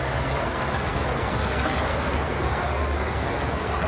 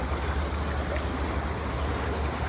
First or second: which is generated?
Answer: first